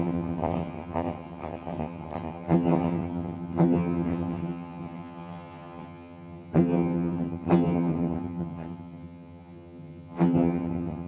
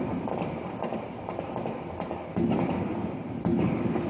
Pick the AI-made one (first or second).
first